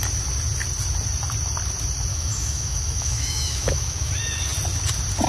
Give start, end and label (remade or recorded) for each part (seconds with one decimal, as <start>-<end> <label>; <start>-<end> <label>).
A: 0.0-2.1 recorded; 2.1-4.1 remade; 4.1-5.3 recorded